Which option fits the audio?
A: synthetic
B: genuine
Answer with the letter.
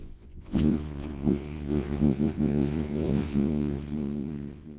A